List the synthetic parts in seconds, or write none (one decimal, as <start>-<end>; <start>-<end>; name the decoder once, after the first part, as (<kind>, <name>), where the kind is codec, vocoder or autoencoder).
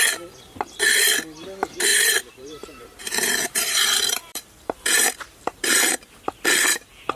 1.9-6.2 (vocoder, BigVGAN v2)